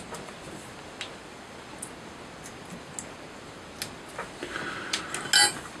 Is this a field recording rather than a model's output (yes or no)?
yes